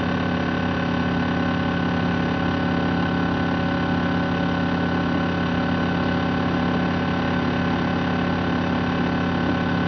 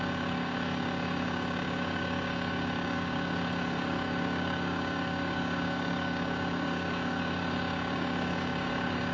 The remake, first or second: second